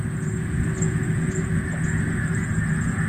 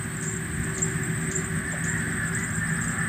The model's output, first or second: first